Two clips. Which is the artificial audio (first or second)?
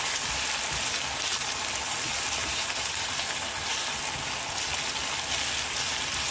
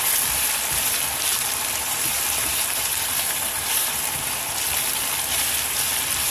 second